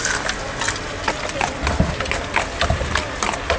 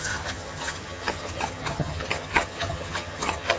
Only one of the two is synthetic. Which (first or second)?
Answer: second